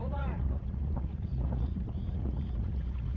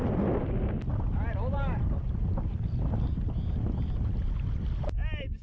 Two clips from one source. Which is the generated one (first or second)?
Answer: first